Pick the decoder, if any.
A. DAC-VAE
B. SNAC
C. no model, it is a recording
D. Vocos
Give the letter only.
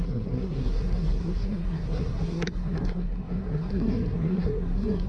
B